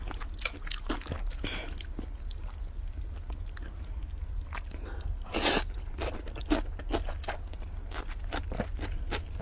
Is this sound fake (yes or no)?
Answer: no